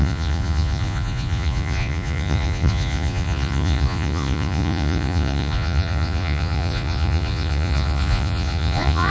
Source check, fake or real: fake